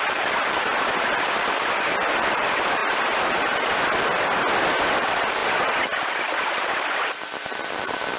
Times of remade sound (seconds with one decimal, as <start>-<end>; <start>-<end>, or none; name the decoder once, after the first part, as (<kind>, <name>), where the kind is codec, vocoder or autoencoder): none